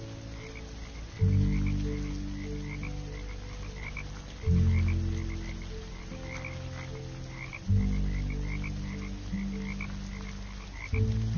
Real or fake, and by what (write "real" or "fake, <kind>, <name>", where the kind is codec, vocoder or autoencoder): real